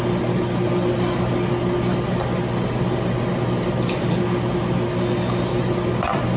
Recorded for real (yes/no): yes